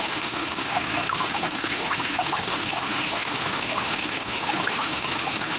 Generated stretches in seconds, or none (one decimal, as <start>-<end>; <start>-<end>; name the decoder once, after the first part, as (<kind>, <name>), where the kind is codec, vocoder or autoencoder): 0.0-5.6 (autoencoder, DAC-VAE)